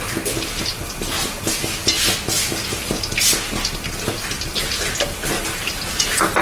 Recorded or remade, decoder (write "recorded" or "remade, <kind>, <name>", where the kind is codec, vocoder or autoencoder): recorded